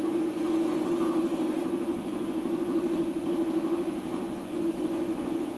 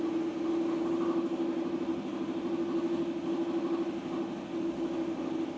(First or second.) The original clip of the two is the second